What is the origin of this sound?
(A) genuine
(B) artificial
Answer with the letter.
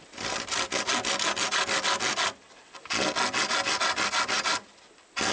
A